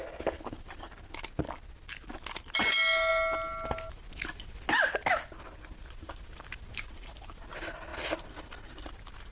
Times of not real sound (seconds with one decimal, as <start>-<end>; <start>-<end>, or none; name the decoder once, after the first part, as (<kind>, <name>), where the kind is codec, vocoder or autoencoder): none